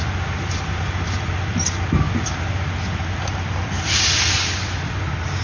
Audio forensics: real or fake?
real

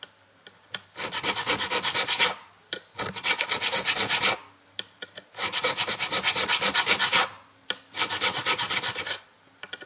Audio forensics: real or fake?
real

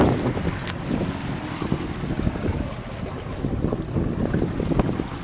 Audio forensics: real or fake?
real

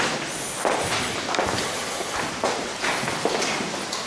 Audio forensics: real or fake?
fake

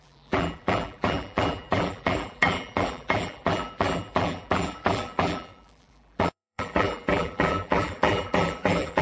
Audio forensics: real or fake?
fake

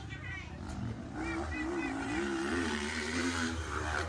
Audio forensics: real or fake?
fake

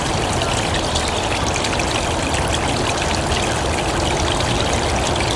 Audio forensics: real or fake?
real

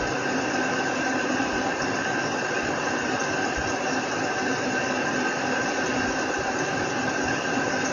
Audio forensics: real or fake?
real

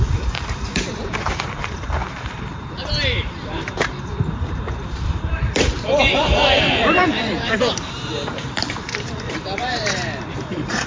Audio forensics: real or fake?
fake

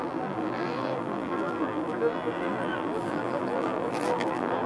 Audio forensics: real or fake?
fake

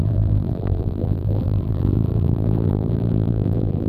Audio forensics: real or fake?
fake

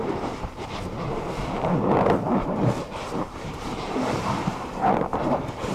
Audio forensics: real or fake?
fake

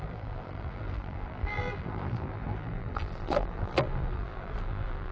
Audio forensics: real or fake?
fake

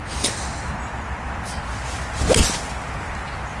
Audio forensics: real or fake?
real